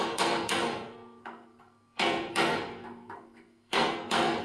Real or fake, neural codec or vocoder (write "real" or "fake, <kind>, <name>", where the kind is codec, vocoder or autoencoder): fake, codec, SNAC